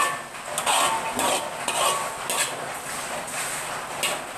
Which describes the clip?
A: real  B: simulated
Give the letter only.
A